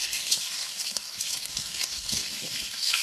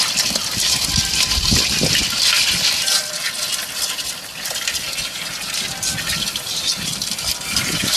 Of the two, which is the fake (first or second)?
first